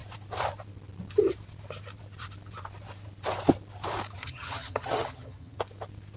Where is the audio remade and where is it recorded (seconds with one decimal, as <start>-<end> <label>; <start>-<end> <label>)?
0.0-4.2 recorded; 4.2-5.6 remade; 5.6-6.2 recorded